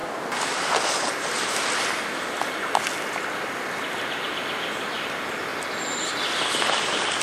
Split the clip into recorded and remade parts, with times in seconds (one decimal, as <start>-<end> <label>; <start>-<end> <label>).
0.0-7.2 recorded